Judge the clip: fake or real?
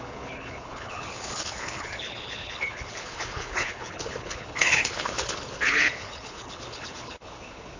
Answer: fake